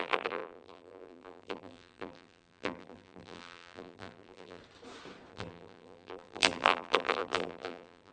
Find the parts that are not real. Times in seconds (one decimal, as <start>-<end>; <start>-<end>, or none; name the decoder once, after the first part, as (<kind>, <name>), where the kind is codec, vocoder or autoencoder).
0.0-4.6 (vocoder, BigVGAN v2); 5.3-8.1